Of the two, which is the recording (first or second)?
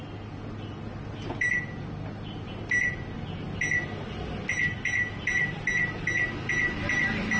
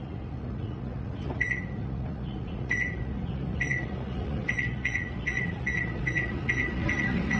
first